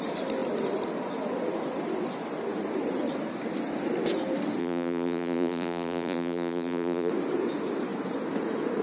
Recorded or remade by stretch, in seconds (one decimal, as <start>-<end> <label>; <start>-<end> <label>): 0.0-4.6 recorded; 4.6-7.1 remade; 7.1-8.8 recorded

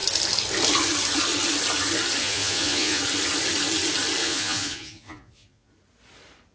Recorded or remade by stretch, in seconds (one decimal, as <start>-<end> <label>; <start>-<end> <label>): 0.0-2.2 recorded; 2.2-3.0 remade; 3.0-4.2 recorded; 4.2-5.7 remade; 5.7-6.5 recorded

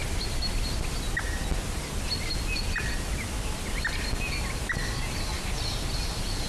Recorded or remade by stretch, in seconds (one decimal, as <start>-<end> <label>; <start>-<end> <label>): 0.0-6.5 recorded